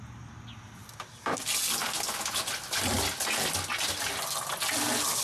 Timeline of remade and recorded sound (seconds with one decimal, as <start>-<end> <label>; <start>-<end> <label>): 0.0-5.2 recorded